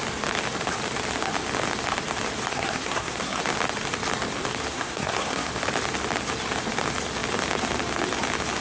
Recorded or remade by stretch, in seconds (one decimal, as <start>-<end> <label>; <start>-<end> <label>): 0.0-2.5 recorded; 2.5-3.4 remade; 3.4-4.7 recorded; 4.7-5.5 remade; 5.5-8.6 recorded